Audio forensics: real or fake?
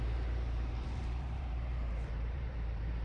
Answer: fake